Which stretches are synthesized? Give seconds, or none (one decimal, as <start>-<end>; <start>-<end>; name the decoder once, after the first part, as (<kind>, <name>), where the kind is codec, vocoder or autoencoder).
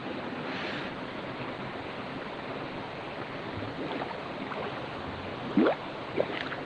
none